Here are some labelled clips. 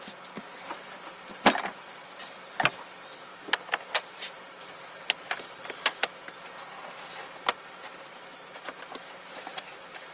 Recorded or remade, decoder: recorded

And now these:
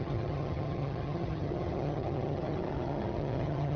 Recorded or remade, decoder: remade, vocoder, HiFi-GAN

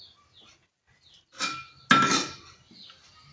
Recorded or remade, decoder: recorded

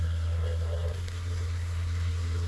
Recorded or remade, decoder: remade, codec, SNAC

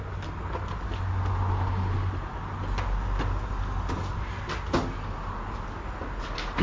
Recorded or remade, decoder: recorded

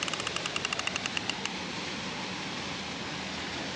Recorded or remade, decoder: recorded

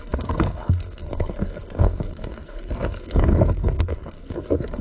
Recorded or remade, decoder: remade, codec, SNAC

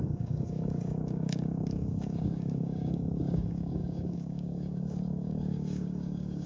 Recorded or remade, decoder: remade, codec, DAC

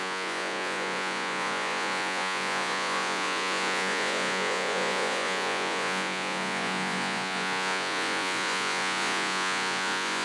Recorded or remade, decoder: remade, vocoder, Vocos